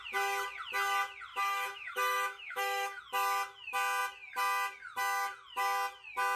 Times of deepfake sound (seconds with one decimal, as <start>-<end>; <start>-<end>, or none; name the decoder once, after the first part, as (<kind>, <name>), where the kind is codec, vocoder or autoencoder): 1.3-3.0 (autoencoder, DAC-VAE)